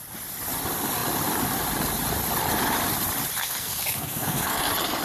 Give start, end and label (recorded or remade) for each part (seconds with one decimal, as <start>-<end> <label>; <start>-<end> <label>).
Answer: 0.0-3.4 recorded; 3.4-4.6 remade; 4.6-5.0 recorded